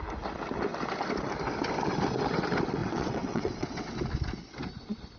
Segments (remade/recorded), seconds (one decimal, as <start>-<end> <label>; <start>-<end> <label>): 0.0-2.8 recorded; 2.8-4.0 remade; 4.0-5.2 recorded